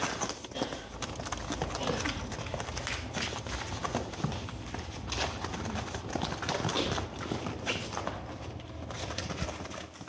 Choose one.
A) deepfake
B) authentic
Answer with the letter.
B